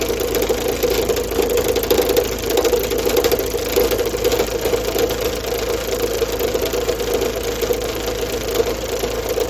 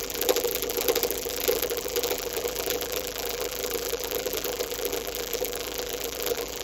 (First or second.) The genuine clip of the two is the first